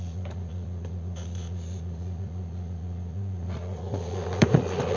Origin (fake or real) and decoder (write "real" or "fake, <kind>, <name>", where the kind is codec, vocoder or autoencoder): fake, vocoder, Vocos